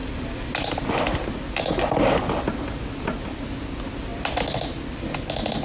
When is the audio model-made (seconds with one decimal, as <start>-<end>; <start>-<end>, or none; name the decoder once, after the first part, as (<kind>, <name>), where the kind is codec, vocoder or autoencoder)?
none